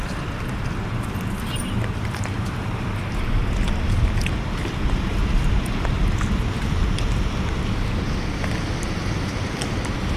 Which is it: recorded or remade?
recorded